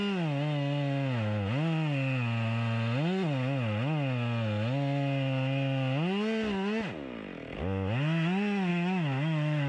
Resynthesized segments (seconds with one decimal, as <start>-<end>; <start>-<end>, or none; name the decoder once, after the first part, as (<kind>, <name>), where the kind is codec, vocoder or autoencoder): 8.7-9.7 (autoencoder, DAC-VAE)